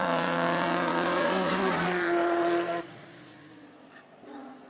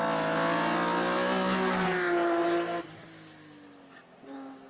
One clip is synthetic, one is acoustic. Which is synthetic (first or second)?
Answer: first